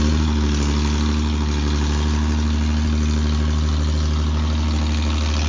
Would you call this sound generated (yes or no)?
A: no